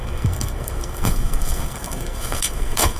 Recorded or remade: remade